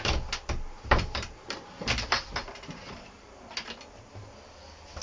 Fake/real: fake